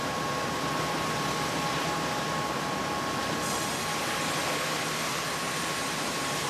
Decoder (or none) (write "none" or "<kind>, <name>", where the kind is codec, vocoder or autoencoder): none